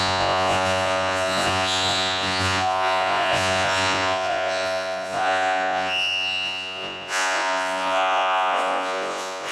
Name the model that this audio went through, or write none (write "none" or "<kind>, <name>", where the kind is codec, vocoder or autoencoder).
vocoder, Vocos